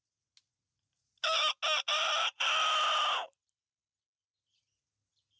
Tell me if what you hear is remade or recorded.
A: recorded